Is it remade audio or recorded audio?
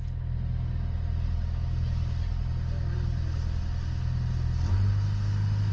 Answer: recorded